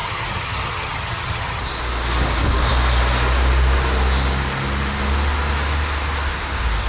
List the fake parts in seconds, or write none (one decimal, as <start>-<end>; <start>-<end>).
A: 0.0-1.6